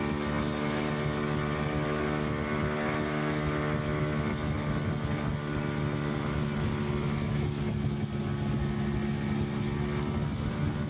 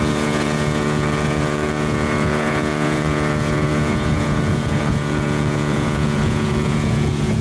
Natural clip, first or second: first